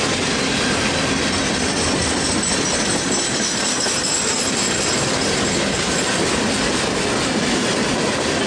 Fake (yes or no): no